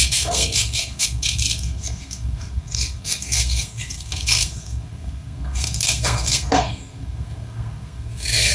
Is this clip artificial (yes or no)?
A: yes